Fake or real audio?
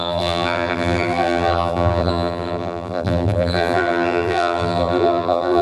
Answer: fake